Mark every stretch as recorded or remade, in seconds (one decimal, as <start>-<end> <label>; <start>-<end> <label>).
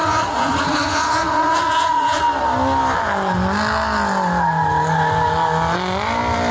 0.0-2.2 remade; 2.2-6.5 recorded